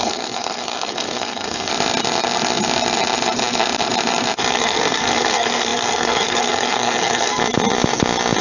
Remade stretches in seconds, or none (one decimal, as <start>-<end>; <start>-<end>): 0.0-1.7; 4.5-7.4